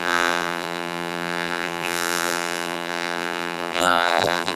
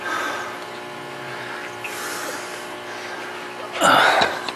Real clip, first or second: second